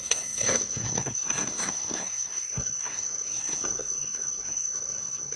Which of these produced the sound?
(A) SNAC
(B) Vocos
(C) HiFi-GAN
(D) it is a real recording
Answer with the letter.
A